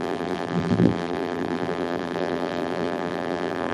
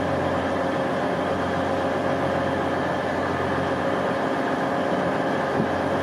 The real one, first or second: second